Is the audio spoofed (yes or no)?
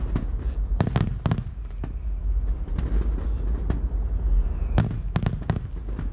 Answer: no